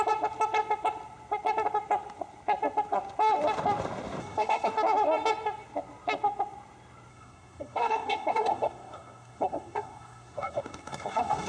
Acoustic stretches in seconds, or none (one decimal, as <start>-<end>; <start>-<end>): 0.0-4.2; 4.7-7.1